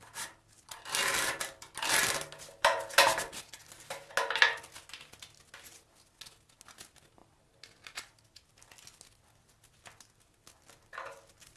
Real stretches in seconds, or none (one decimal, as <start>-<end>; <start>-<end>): 0.0-11.6